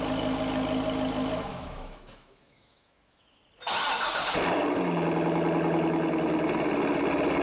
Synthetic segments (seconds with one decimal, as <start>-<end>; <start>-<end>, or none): 1.5-3.4